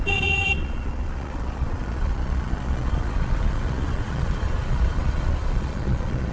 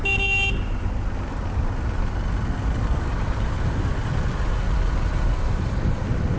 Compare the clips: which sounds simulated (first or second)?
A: first